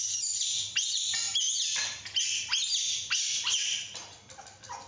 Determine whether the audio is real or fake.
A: real